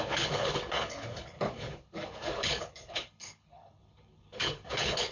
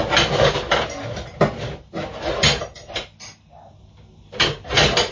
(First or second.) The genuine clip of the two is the second